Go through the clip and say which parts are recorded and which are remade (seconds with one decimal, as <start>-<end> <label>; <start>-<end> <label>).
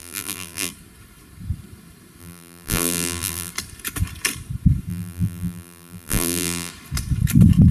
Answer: 0.0-0.7 remade; 0.7-2.2 recorded; 2.2-3.5 remade; 3.5-4.9 recorded; 4.9-6.7 remade; 6.7-7.7 recorded